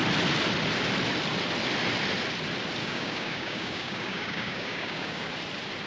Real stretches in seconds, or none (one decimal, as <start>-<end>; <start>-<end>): 0.0-2.8; 5.3-5.9